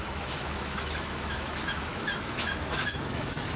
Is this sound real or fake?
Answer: fake